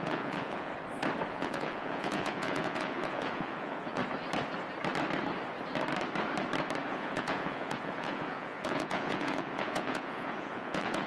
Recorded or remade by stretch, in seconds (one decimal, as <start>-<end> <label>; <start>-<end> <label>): 0.0-0.7 remade; 0.7-1.3 recorded; 1.3-4.0 remade; 4.0-6.9 recorded; 6.9-11.1 remade